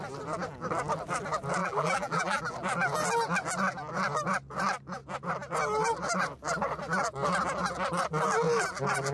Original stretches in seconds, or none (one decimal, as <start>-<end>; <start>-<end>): 0.0-1.6; 2.4-9.1